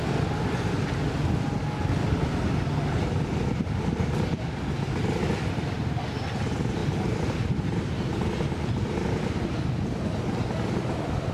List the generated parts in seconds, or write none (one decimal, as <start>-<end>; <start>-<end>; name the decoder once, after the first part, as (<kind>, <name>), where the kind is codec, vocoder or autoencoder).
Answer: 6.8-7.8 (vocoder, BigVGAN v2)